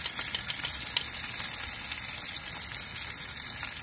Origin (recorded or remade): recorded